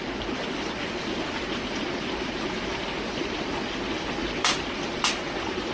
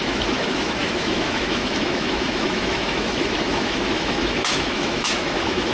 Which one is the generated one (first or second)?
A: second